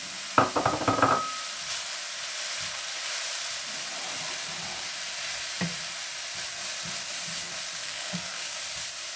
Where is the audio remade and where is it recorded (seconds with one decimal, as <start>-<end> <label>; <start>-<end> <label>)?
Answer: 0.0-7.8 recorded; 7.8-8.6 remade; 8.6-9.2 recorded